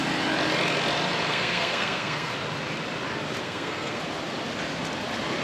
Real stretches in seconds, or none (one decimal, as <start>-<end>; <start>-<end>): 0.0-1.3; 2.3-3.4; 4.0-5.4